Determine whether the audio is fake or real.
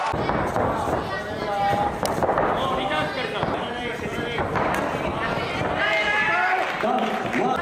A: real